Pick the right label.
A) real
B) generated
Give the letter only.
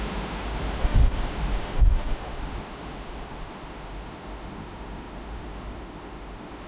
B